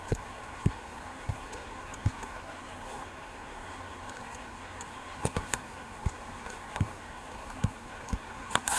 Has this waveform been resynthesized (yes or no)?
yes